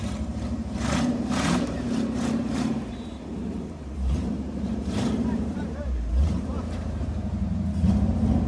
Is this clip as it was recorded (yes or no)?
no